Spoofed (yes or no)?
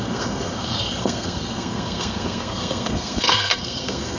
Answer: yes